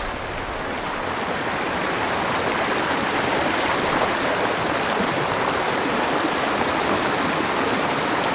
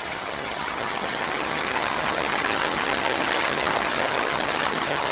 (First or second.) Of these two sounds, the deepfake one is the second